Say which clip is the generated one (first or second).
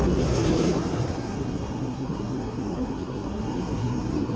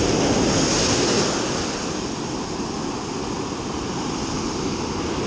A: first